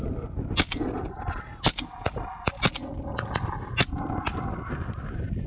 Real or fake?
real